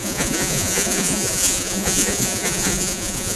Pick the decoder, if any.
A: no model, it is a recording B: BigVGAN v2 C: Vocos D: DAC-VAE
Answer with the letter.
C